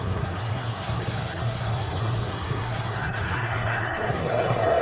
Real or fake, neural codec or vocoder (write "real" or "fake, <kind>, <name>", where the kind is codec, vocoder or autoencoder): fake, codec, SNAC